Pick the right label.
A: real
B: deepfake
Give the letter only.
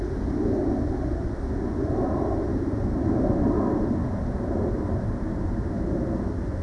A